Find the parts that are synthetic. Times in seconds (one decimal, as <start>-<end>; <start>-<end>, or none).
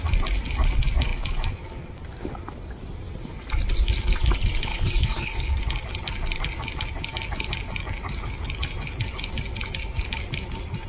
4.7-5.6